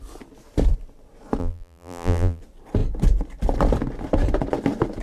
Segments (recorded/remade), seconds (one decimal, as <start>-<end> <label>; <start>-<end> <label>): 0.0-1.4 recorded; 1.4-2.4 remade; 2.4-5.0 recorded